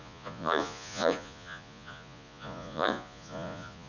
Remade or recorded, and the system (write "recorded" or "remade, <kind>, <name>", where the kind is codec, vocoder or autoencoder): remade, vocoder, Vocos